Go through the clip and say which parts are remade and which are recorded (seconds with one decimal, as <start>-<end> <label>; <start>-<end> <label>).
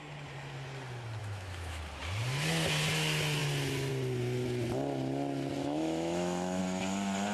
0.0-1.2 recorded; 1.2-1.8 remade; 1.8-5.6 recorded; 5.6-6.6 remade; 6.6-7.3 recorded